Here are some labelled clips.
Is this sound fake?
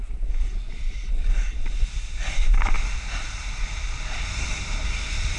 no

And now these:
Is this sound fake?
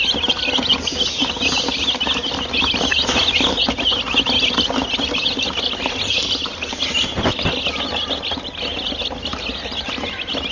no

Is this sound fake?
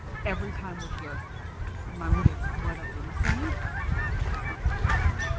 no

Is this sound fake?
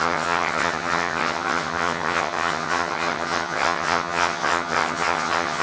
yes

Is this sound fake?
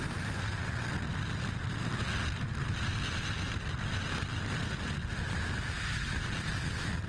no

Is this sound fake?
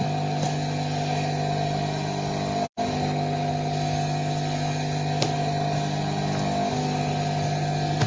no